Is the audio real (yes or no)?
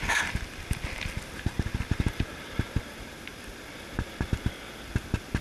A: yes